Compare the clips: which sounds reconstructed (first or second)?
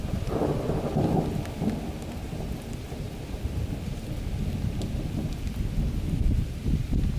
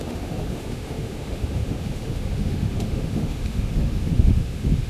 second